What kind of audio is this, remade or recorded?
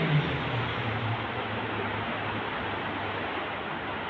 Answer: recorded